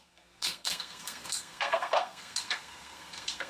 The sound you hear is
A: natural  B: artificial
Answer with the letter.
B